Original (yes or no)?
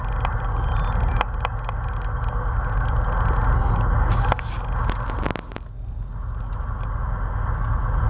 yes